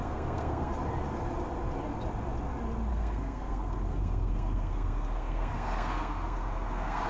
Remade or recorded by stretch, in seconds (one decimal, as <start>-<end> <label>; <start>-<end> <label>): 0.0-0.7 remade; 0.7-2.9 recorded; 2.9-7.1 remade